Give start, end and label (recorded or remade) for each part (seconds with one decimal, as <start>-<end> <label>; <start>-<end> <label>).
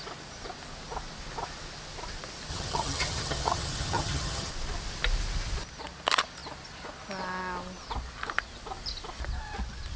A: 0.0-2.5 recorded; 2.5-4.5 remade; 4.5-10.0 recorded